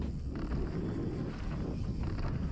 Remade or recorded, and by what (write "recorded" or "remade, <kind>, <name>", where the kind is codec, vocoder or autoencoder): recorded